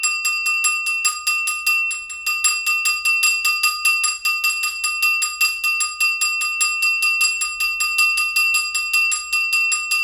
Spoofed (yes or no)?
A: no